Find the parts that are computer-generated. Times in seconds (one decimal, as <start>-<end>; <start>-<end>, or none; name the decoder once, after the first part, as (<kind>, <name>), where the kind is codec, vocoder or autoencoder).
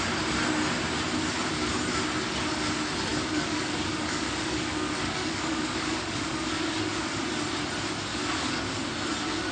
3.1-7.1 (codec, DAC); 8.1-8.9